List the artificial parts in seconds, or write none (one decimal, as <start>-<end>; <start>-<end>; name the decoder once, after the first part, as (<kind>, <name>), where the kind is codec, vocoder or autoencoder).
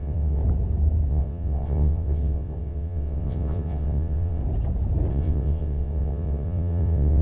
0.0-0.4 (vocoder, WaveNeXt); 1.1-4.4; 5.1-7.2